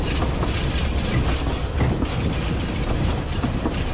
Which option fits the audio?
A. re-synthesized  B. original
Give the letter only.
B